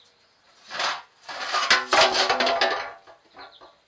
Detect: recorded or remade recorded